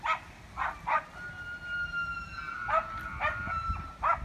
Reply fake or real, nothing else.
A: real